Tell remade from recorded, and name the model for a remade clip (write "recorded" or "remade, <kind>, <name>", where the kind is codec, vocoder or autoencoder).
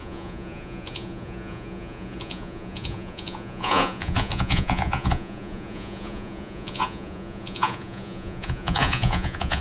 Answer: remade, vocoder, Vocos